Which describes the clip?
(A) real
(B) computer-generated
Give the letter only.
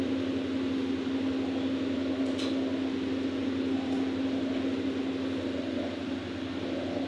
A